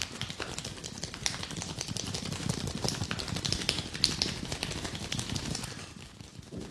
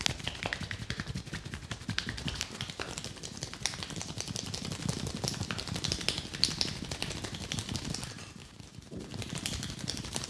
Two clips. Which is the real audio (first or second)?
second